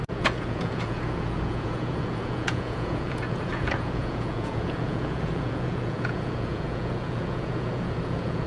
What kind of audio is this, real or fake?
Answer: fake